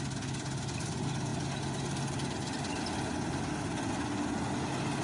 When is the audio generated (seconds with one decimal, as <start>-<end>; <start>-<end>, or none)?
none